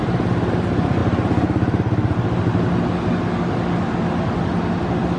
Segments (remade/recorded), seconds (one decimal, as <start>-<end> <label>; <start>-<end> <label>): 0.0-5.2 recorded